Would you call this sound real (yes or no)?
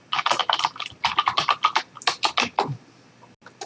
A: yes